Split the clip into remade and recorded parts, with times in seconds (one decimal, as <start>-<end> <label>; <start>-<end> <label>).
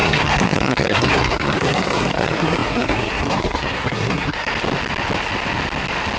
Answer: 0.0-4.5 remade; 4.5-6.2 recorded